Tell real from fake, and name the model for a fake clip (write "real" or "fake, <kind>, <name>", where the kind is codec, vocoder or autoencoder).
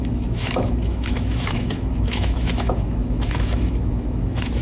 fake, autoencoder, DAC-VAE